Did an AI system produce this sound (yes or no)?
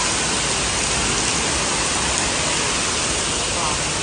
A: no